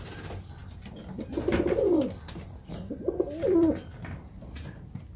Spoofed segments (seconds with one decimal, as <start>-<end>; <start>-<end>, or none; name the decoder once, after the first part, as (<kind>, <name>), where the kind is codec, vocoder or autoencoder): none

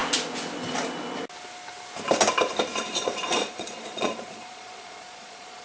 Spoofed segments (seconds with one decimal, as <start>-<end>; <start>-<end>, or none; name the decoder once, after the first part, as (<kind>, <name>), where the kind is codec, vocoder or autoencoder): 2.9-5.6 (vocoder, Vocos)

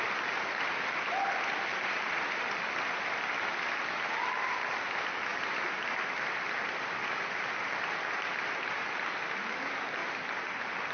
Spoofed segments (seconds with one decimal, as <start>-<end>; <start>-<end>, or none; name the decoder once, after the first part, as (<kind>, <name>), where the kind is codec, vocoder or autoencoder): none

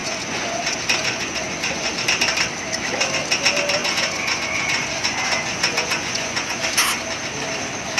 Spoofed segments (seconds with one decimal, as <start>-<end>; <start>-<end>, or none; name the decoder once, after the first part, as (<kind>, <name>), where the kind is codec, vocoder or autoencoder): 0.0-0.6 (vocoder, Vocos); 1.0-1.9; 3.8-6.6

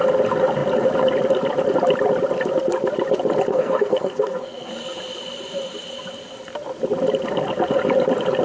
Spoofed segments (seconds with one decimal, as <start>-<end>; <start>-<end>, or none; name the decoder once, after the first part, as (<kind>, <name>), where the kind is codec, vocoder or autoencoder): 3.5-4.7 (codec, SNAC)

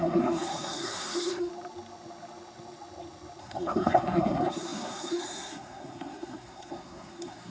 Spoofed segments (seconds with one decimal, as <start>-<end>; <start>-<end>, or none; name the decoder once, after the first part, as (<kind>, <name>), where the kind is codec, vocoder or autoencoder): 0.0-1.5 (codec, SNAC); 3.4-7.5

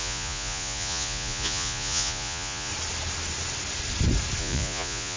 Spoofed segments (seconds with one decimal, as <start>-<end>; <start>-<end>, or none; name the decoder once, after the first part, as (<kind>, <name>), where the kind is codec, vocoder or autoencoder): 0.0-2.7 (vocoder, Vocos); 4.4-5.2

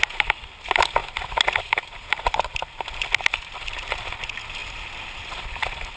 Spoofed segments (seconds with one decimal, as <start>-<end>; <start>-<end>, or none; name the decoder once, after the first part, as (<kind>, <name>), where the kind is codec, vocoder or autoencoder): 4.6-5.5 (vocoder, BigVGAN v2)